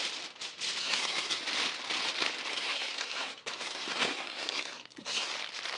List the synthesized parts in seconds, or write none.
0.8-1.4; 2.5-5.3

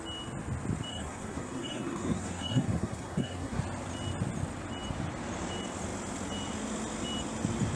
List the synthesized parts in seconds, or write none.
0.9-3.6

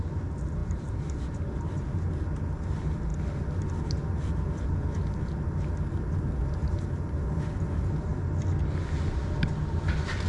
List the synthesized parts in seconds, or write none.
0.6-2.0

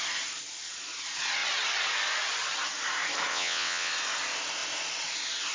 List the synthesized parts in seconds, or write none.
3.3-3.9

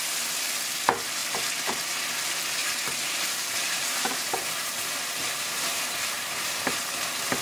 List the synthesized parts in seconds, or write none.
2.6-7.0

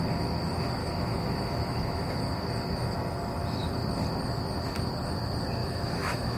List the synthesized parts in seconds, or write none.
0.8-2.1; 5.6-6.4

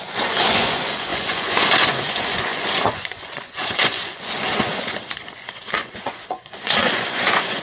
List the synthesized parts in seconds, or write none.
0.0-7.6